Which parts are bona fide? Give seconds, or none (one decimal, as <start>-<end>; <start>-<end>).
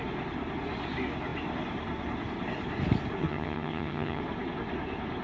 0.0-3.2; 4.2-5.2